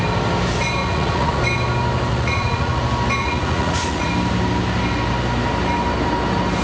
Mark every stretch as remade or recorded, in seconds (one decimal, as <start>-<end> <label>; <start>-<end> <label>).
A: 0.0-0.8 recorded; 0.8-1.4 remade; 1.4-2.1 recorded; 2.1-2.8 remade; 2.8-3.2 recorded; 3.2-4.1 remade; 4.1-6.6 recorded

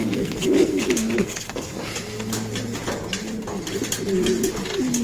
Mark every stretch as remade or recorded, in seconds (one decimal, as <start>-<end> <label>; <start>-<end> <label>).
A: 0.0-1.9 remade; 1.9-5.0 recorded

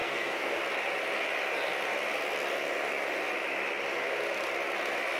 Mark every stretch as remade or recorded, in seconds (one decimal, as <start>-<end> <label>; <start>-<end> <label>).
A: 0.0-0.6 remade; 0.6-5.2 recorded

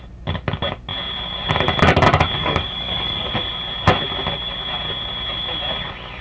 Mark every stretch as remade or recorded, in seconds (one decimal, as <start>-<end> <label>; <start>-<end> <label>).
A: 0.0-2.4 recorded; 2.4-3.3 remade; 3.3-6.2 recorded

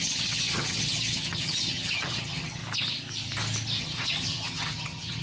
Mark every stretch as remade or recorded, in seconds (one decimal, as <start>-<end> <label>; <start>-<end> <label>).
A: 0.0-2.6 remade; 2.6-3.8 recorded; 3.8-5.2 remade

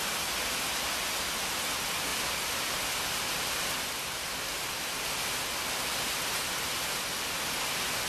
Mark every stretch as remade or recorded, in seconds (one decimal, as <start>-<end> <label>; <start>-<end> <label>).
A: 0.0-8.1 recorded

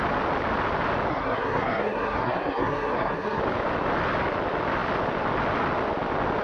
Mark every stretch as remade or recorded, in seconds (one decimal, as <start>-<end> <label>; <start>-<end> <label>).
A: 0.0-1.1 recorded; 1.1-3.4 remade; 3.4-6.4 recorded

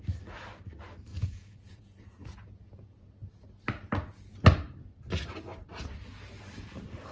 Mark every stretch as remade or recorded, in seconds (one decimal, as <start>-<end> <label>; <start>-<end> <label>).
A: 0.0-1.1 recorded; 1.1-3.3 remade; 3.3-7.1 recorded